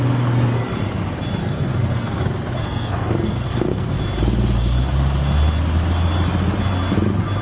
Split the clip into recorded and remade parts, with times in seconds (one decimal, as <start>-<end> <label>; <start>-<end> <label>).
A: 0.0-1.4 recorded; 1.4-2.2 remade; 2.2-2.6 recorded; 2.6-4.0 remade; 4.0-7.4 recorded